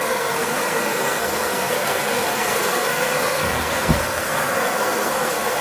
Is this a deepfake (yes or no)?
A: yes